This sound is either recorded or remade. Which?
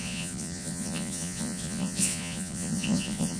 remade